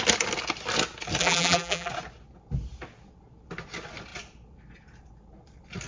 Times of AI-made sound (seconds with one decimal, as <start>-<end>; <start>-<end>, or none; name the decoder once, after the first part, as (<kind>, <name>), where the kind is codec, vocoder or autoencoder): 1.2-1.9 (vocoder, BigVGAN v2)

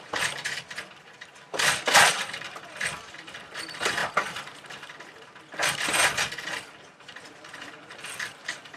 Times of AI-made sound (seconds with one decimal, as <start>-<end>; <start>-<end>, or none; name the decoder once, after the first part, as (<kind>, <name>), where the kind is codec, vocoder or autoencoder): 0.0-4.0 (vocoder, BigVGAN v2); 7.9-8.8